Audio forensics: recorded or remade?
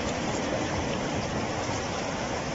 recorded